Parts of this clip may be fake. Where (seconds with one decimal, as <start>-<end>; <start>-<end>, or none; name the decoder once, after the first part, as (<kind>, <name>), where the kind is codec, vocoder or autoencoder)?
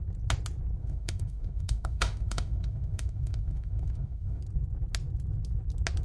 0.8-4.4 (autoencoder, DAC-VAE)